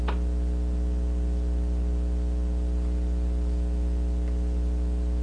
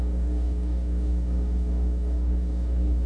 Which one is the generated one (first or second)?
second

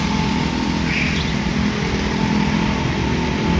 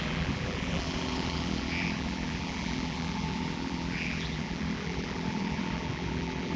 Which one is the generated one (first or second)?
second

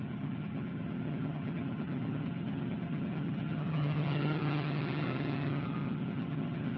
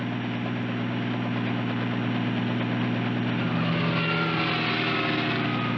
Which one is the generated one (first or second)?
first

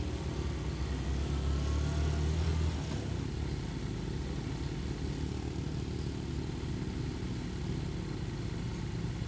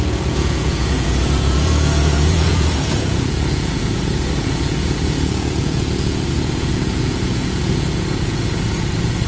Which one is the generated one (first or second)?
second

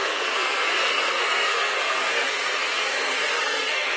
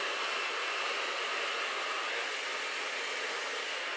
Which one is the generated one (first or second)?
first